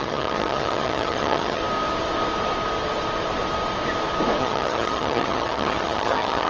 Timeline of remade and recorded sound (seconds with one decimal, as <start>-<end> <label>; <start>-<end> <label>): 0.0-1.6 remade; 1.6-4.4 recorded; 4.4-6.5 remade